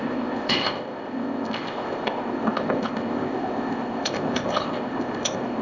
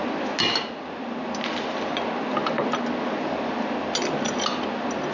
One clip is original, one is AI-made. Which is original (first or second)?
second